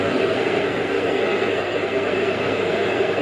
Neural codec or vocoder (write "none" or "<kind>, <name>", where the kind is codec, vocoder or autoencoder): codec, SNAC